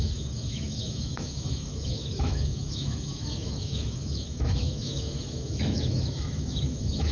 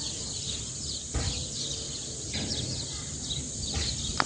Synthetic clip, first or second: first